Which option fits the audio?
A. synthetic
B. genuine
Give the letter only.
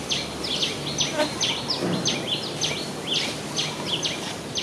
B